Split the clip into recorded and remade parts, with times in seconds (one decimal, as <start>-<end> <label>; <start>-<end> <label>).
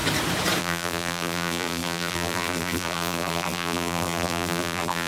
0.0-0.6 recorded; 0.6-5.1 remade